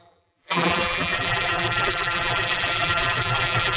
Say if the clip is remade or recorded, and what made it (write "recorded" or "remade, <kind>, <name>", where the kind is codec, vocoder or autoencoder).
remade, vocoder, BigVGAN v2